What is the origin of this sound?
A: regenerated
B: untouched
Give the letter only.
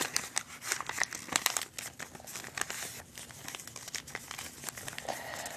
B